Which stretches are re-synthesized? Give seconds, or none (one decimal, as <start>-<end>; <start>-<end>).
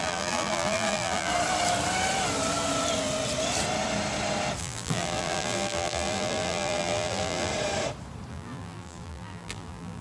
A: 0.0-1.3; 4.6-7.5; 8.3-10.0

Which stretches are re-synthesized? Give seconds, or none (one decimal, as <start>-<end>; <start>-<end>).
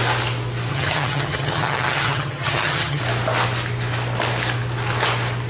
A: 0.7-3.0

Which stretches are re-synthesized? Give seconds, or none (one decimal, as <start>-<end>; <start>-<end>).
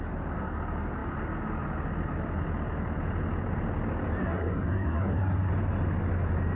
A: 4.2-5.5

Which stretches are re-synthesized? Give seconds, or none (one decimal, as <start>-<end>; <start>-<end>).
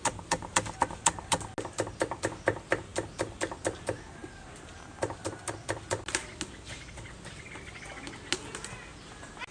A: none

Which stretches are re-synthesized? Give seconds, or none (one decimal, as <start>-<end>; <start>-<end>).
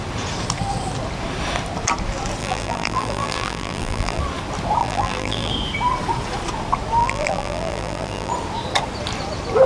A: 2.4-4.2; 4.8-5.5; 7.0-8.3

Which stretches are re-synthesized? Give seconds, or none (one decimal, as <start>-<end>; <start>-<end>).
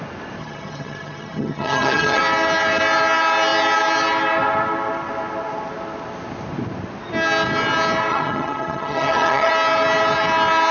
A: 0.4-2.2; 8.1-9.5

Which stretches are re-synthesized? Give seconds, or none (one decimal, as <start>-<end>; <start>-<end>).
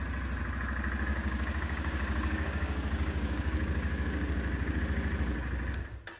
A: 1.1-4.8